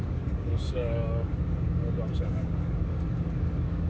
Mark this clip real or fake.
fake